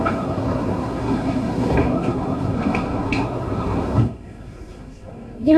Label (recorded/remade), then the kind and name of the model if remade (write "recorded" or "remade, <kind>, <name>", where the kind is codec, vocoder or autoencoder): remade, codec, SNAC